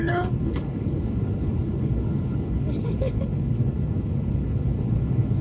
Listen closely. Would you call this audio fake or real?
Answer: fake